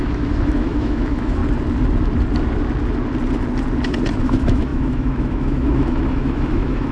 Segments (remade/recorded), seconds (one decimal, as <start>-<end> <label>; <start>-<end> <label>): 0.0-1.4 remade; 1.4-4.2 recorded; 4.2-6.9 remade